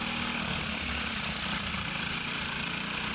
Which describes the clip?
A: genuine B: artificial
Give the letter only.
A